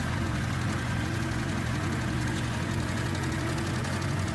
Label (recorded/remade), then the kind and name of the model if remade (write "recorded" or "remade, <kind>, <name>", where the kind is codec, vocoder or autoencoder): remade, vocoder, Vocos